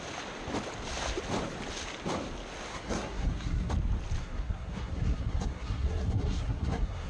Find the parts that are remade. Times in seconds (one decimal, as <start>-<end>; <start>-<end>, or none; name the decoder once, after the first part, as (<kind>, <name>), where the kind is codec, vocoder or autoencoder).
2.7-3.7 (codec, SNAC); 4.2-7.1

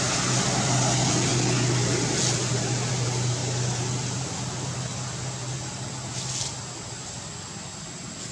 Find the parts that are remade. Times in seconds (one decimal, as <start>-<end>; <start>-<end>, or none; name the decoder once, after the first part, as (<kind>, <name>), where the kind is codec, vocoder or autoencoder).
none

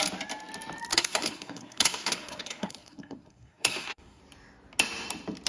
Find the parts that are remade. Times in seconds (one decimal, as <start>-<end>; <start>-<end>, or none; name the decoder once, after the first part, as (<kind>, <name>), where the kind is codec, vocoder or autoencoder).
0.9-4.2 (codec, SNAC)

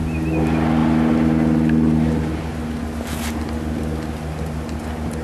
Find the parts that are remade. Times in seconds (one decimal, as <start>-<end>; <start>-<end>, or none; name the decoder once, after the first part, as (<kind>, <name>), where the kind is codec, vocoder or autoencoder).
none

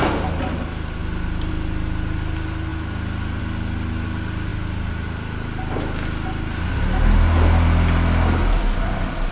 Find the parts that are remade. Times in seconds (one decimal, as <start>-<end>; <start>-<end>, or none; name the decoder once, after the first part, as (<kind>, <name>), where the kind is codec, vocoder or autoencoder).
none

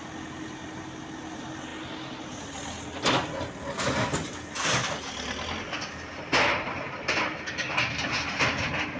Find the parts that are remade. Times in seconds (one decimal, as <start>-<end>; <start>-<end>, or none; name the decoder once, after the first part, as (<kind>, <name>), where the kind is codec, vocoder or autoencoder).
none

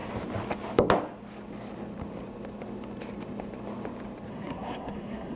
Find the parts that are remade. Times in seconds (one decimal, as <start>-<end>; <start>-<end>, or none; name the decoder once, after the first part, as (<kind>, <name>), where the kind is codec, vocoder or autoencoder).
4.3-5.4 (codec, SNAC)